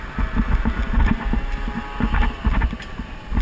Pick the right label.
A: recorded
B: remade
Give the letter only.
A